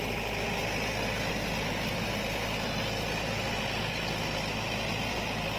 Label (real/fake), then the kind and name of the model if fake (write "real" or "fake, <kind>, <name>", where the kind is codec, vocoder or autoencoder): real